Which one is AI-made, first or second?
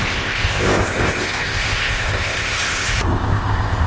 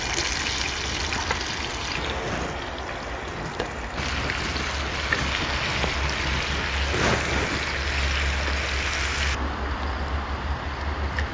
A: first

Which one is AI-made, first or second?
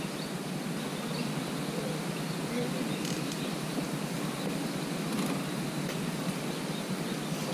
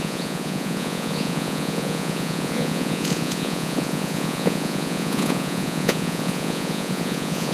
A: second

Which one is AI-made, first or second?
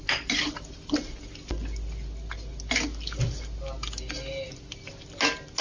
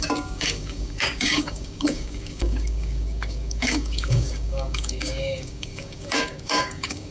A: second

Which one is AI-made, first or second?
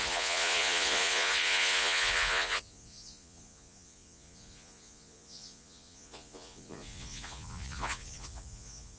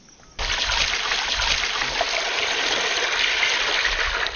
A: first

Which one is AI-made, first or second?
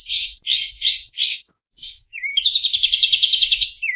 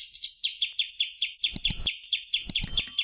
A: first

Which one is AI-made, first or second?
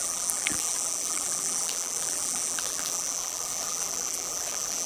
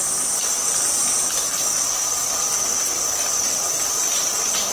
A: first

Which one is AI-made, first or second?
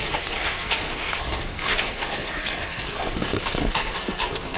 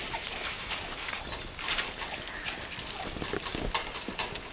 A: first